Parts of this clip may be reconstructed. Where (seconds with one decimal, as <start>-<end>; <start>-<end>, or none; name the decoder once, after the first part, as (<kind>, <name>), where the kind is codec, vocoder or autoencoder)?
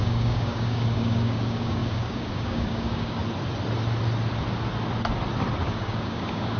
0.0-3.2 (codec, DAC); 5.6-6.6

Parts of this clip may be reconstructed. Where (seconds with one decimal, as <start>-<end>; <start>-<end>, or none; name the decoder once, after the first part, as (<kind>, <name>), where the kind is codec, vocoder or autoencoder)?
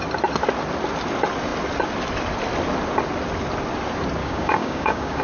4.2-5.2 (codec, DAC)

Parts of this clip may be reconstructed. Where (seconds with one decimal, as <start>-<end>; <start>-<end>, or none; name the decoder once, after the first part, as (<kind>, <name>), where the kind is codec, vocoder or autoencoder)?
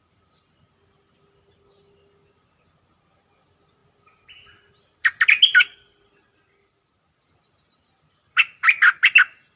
none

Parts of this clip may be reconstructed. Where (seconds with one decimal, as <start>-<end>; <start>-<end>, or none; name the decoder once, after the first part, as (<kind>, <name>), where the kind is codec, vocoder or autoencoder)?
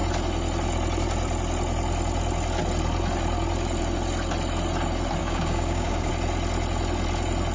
5.2-6.1 (codec, DAC)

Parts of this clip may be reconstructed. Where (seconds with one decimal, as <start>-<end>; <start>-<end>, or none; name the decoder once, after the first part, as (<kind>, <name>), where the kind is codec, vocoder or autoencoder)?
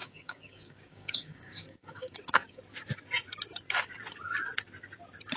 0.0-2.6 (codec, DAC)